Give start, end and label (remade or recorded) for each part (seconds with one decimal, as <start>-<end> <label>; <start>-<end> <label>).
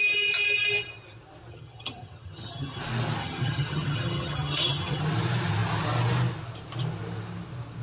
0.0-1.5 recorded; 1.5-2.8 remade; 2.8-3.2 recorded; 3.2-5.0 remade; 5.0-7.8 recorded